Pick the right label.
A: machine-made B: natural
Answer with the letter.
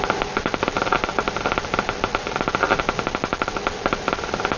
B